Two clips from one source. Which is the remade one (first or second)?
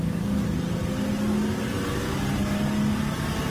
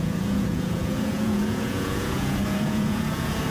second